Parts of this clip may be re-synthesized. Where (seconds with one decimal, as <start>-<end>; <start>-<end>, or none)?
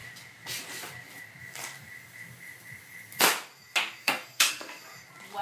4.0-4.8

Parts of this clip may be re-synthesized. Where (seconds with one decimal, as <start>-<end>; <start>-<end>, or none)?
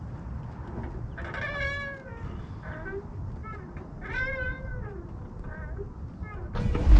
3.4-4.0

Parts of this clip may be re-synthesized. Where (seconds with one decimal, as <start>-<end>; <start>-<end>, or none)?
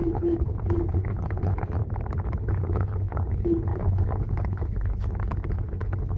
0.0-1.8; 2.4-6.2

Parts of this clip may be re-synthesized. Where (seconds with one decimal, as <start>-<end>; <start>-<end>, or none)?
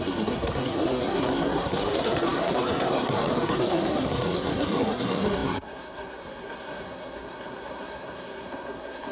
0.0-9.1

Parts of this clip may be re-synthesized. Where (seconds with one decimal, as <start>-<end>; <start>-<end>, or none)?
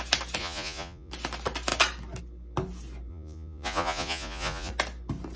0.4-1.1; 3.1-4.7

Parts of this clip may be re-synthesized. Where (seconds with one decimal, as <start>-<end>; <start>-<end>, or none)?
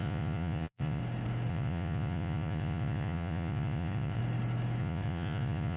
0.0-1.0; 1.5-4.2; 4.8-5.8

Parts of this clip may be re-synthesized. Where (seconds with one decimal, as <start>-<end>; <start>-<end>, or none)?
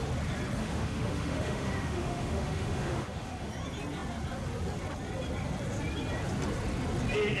0.6-3.5